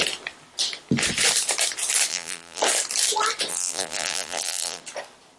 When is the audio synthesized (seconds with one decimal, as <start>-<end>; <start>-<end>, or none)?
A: 2.1-2.6; 3.5-4.8